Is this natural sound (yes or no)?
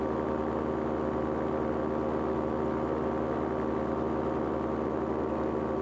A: yes